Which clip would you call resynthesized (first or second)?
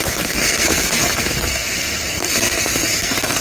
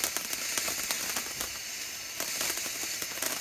first